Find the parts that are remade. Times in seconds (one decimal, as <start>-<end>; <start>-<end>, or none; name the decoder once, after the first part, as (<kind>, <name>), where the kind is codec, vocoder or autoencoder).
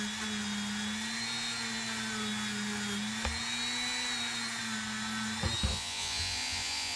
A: 5.7-7.0 (vocoder, Vocos)